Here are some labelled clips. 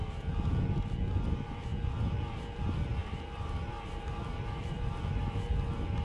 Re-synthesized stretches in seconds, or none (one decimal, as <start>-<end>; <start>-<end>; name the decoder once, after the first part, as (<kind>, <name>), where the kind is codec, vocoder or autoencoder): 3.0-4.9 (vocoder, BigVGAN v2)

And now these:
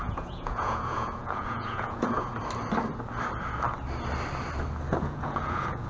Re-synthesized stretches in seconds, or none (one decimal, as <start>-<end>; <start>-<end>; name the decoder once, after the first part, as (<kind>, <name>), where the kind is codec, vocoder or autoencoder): 0.0-2.3 (vocoder, Vocos); 4.9-5.9

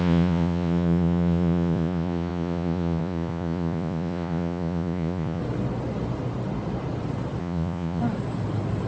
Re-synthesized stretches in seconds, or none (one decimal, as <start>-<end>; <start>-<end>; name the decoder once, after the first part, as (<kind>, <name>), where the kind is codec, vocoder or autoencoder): 0.0-5.4 (vocoder, Vocos); 7.4-8.0

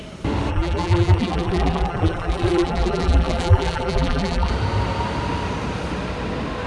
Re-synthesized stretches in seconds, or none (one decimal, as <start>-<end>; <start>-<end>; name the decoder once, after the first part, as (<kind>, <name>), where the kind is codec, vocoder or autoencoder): 0.5-4.5 (vocoder, BigVGAN v2)

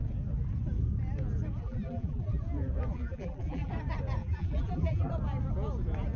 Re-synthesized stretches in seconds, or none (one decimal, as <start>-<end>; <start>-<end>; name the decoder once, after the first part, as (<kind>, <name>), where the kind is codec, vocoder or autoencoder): 1.6-2.4 (vocoder, BigVGAN v2); 2.9-3.7; 4.2-5.1